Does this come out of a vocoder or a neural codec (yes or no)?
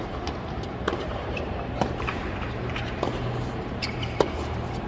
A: yes